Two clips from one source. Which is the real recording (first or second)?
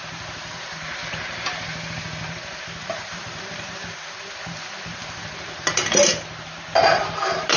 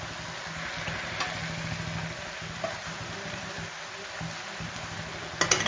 second